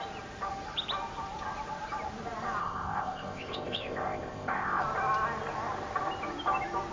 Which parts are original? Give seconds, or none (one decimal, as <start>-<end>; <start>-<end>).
0.0-2.6; 4.8-6.9